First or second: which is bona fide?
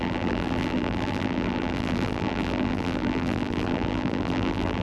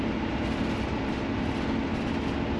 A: second